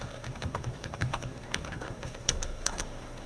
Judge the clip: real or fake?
fake